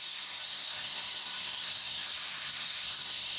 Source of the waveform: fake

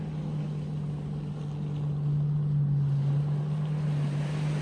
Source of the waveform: real